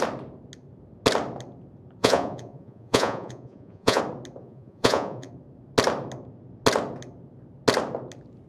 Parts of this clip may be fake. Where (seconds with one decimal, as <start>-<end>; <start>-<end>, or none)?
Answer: 2.0-4.0; 4.4-5.3